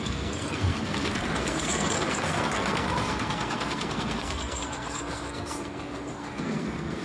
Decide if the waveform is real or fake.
fake